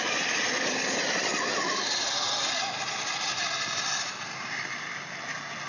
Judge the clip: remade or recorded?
recorded